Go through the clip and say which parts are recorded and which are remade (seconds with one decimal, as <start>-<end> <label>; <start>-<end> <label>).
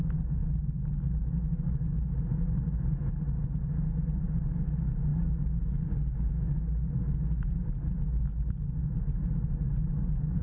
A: 0.0-10.4 recorded